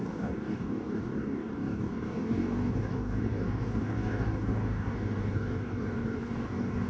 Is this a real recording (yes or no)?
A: no